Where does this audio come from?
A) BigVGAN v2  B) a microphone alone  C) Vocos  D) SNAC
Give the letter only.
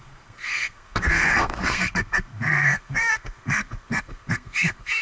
D